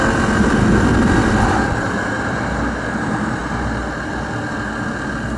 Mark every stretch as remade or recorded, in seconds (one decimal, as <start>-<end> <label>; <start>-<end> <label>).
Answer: 0.0-5.4 recorded